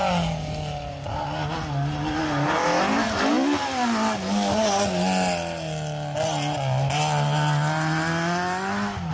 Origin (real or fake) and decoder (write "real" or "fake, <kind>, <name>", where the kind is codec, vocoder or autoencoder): real